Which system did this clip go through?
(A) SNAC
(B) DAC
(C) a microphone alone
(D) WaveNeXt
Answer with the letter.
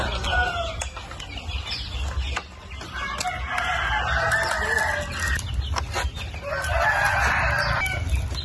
C